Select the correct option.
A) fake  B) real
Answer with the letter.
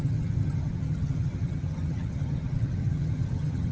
A